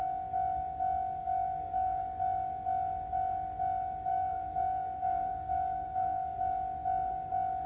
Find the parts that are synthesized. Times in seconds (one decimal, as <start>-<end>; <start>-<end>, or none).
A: 1.2-2.0; 4.1-6.4